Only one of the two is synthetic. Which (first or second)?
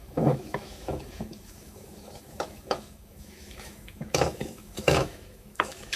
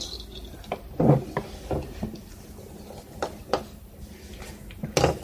first